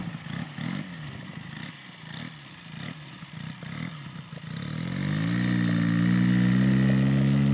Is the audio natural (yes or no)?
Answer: yes